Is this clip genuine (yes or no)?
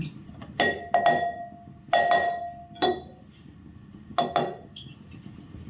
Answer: yes